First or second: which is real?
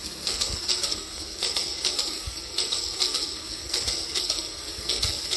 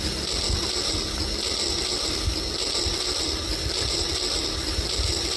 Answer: second